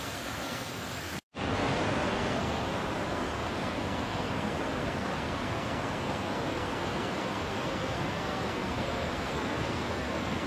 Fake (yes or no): yes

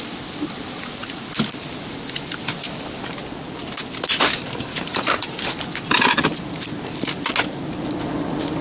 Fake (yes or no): no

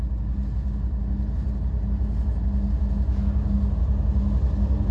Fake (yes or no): no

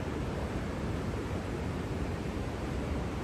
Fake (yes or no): yes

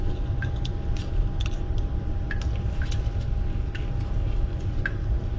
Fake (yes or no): no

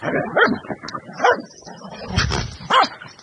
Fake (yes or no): no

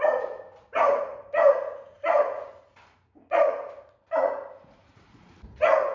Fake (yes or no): yes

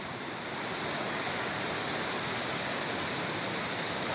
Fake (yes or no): no